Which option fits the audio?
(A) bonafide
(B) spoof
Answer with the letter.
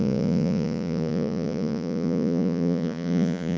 B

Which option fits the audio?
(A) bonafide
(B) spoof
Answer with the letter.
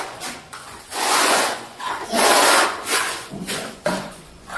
B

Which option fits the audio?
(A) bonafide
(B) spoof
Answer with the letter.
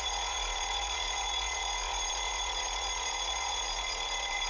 B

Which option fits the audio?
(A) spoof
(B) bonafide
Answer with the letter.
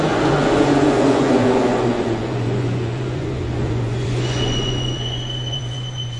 A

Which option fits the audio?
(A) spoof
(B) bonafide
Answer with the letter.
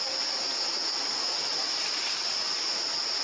B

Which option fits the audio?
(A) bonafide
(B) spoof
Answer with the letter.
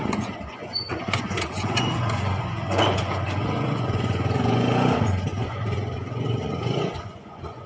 B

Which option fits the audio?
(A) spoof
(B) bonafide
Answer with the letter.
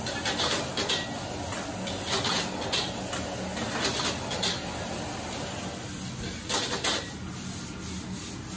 B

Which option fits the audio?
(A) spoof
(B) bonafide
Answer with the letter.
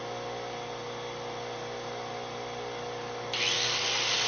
B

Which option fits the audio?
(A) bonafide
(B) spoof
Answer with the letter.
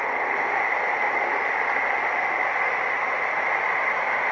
A